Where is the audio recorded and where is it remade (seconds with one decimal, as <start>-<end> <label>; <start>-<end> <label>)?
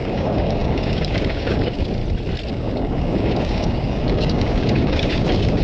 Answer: 0.0-2.0 remade; 2.0-2.5 recorded; 2.5-5.6 remade